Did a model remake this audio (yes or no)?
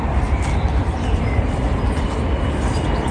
no